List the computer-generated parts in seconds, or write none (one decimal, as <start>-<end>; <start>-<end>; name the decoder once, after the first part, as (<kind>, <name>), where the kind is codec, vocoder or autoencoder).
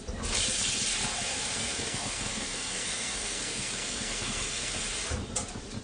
1.3-4.8 (codec, SNAC)